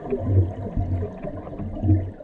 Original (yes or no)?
yes